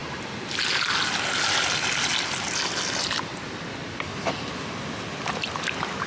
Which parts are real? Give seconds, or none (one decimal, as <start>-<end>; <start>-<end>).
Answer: 0.0-6.1